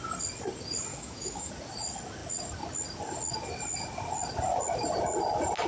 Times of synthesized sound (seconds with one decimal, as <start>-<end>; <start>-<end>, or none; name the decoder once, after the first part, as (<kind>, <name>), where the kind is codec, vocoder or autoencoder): 0.9-1.5 (autoencoder, DAC-VAE)